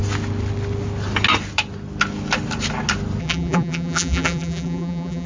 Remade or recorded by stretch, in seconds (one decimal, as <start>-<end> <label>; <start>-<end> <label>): 0.0-3.2 recorded; 3.2-5.3 remade